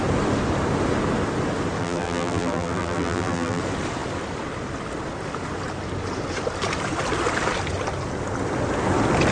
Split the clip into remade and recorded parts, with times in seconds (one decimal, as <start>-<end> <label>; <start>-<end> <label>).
0.0-1.8 recorded; 1.8-3.6 remade; 3.6-9.3 recorded